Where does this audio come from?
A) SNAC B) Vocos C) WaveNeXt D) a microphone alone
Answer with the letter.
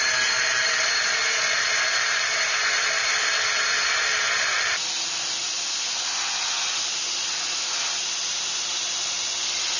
D